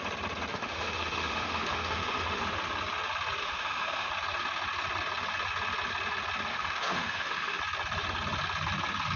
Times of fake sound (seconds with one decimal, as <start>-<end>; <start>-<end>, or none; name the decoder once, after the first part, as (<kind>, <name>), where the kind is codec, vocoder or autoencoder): 0.5-2.4 (autoencoder, DAC-VAE); 3.4-4.1; 6.5-7.6